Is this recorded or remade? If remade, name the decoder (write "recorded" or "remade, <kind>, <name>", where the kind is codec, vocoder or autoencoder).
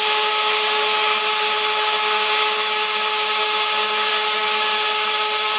remade, autoencoder, DAC-VAE